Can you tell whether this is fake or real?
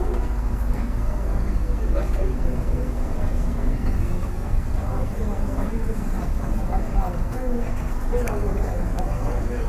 fake